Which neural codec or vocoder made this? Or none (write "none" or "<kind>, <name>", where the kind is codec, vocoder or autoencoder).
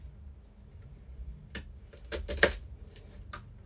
none